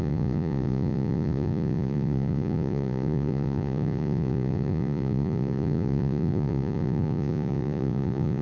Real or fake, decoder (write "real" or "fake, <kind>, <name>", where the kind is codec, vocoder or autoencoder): fake, vocoder, Vocos